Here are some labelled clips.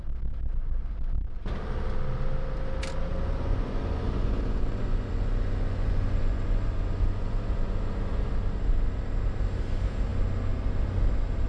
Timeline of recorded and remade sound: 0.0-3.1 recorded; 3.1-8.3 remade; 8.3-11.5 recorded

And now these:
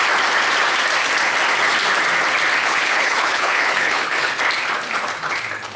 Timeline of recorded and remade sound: 0.0-2.6 recorded; 2.6-4.3 remade; 4.3-5.8 recorded

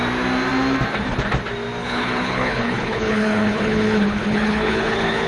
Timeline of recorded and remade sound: 0.0-1.8 recorded; 1.8-5.3 remade

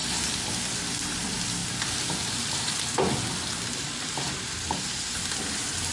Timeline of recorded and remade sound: 0.0-1.6 recorded; 1.6-5.1 remade; 5.1-5.9 recorded

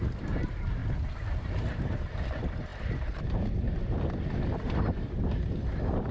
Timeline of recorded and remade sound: 0.0-0.8 remade; 0.8-1.4 recorded; 1.4-6.1 remade